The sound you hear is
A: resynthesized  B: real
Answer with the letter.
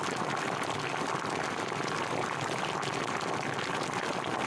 B